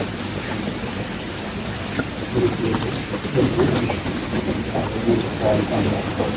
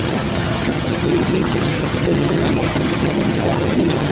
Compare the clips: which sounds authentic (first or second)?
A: first